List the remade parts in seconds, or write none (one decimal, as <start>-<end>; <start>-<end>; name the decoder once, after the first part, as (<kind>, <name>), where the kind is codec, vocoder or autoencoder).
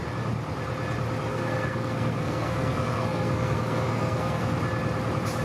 1.3-4.5 (codec, SNAC)